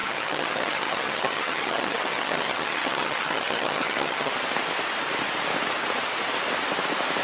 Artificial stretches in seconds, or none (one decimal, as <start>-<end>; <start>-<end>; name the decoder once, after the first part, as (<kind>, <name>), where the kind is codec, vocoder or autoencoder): 0.0-4.3 (vocoder, HiFi-GAN)